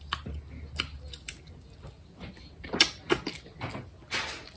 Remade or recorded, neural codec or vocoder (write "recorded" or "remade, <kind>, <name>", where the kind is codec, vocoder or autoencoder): recorded